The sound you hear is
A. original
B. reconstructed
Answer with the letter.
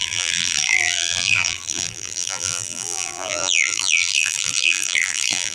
B